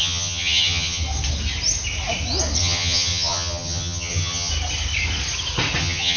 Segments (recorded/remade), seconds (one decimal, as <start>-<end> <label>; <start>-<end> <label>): 0.0-1.0 remade; 1.0-2.6 recorded; 2.6-4.5 remade; 4.5-5.8 recorded; 5.8-6.2 remade